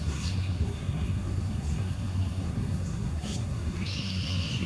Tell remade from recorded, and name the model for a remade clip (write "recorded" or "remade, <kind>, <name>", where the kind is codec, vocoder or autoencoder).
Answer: remade, codec, SNAC